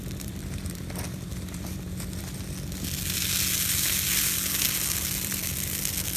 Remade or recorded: recorded